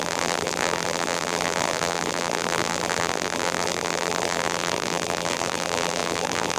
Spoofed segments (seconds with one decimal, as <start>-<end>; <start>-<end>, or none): 0.0-6.6